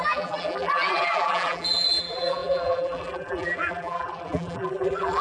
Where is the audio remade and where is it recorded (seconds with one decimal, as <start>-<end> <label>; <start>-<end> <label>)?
0.0-5.2 remade